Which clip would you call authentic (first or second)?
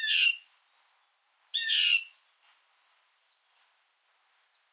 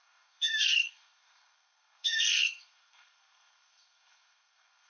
first